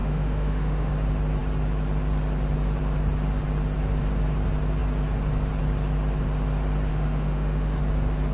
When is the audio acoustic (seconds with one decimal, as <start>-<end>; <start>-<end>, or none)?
0.9-6.9; 7.8-8.3